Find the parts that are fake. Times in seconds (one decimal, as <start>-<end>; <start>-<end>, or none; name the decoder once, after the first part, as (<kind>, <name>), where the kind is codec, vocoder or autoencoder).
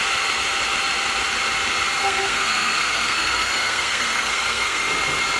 2.0-4.9 (codec, SNAC)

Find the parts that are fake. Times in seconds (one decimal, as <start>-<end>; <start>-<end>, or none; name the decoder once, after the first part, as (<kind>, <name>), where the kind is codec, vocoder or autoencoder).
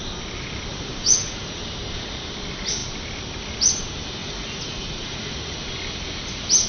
0.7-1.6 (vocoder, Vocos); 4.2-5.3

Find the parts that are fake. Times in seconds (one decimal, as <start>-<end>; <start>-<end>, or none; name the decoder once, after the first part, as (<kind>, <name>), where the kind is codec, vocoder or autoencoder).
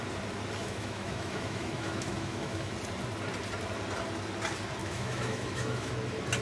0.6-2.7 (autoencoder, DAC-VAE); 4.8-5.9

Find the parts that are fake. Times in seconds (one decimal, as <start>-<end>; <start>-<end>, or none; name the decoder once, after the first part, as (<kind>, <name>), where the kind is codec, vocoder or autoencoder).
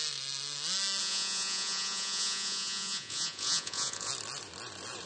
1.0-4.1 (vocoder, Vocos)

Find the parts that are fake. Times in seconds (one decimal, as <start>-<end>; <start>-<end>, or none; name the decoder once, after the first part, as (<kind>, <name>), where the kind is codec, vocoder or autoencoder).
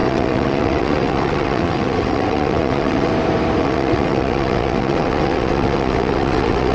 0.0-3.1 (vocoder, WaveNeXt); 3.6-6.7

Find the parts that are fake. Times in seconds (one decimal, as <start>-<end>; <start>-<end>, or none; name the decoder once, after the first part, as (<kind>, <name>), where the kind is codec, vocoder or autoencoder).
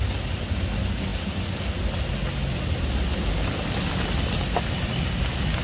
none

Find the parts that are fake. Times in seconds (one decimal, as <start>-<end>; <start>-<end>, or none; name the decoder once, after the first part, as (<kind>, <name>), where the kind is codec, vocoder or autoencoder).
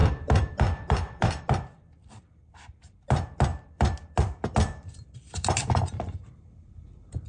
0.0-7.3 (vocoder, BigVGAN v2)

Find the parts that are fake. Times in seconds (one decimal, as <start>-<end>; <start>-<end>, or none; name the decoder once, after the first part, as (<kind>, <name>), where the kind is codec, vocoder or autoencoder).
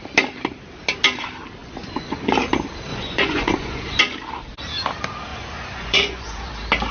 1.6-2.3 (vocoder, Vocos); 2.9-4.0; 5.3-6.5